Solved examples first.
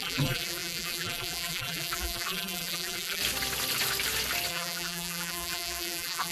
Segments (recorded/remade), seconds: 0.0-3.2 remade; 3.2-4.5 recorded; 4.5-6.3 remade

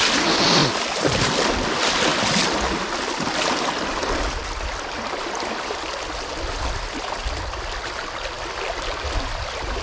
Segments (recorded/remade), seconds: 0.0-9.8 recorded